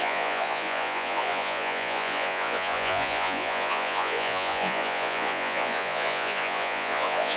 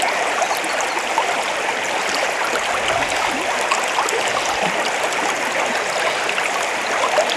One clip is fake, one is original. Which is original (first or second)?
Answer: second